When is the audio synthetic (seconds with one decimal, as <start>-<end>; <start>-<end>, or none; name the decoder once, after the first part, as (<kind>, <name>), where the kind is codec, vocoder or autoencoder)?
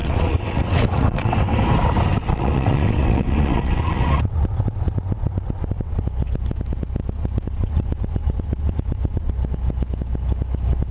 0.0-1.3 (vocoder, WaveNeXt); 2.2-6.0; 7.0-9.3